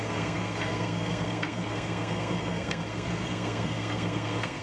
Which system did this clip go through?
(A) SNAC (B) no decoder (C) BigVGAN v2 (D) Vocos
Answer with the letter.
A